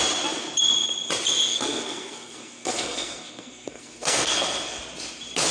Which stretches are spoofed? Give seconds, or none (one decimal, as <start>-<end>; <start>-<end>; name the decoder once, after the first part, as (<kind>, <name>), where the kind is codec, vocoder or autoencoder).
1.5-4.8 (codec, SNAC)